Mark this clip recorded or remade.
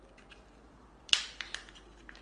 remade